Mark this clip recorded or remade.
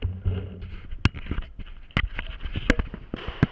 recorded